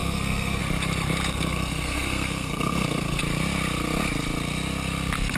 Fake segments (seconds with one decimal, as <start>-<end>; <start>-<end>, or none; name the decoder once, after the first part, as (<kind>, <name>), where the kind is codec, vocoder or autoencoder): 0.0-0.6 (codec, SNAC); 1.3-3.2